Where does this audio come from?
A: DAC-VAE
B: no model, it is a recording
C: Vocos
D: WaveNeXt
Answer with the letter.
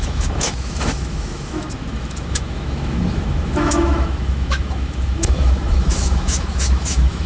A